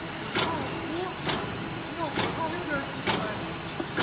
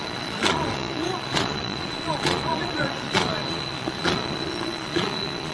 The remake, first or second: second